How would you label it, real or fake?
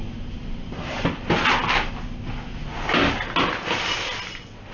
real